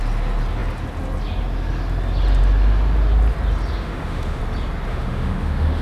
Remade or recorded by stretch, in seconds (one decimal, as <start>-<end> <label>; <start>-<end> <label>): 0.0-3.8 recorded; 3.8-4.4 remade; 4.4-4.9 recorded; 4.9-5.8 remade